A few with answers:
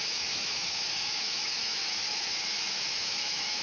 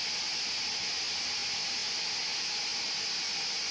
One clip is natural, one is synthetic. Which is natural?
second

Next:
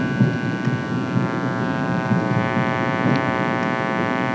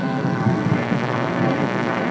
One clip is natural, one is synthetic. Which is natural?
first